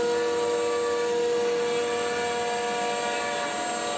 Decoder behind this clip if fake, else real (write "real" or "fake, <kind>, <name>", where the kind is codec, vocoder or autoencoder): real